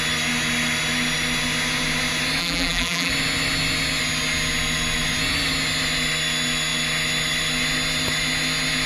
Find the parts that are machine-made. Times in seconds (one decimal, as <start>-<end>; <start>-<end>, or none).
2.4-3.1